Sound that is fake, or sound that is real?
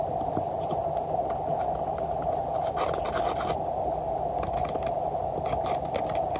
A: real